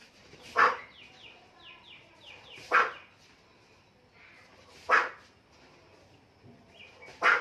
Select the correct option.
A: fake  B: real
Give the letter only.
B